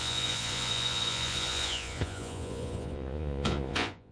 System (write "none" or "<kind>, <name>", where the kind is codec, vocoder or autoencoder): vocoder, Vocos